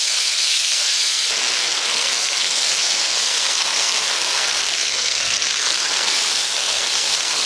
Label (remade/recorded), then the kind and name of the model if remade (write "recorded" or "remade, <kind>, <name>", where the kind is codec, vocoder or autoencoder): remade, codec, SNAC